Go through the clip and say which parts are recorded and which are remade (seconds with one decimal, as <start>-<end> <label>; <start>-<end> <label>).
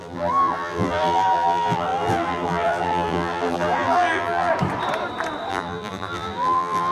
0.0-4.5 remade; 4.5-5.5 recorded; 5.5-6.9 remade